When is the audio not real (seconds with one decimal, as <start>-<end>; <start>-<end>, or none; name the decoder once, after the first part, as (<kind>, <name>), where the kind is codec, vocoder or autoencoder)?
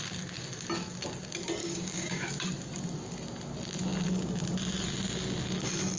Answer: 1.6-2.3 (codec, DAC)